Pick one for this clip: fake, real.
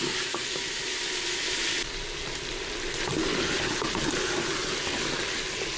real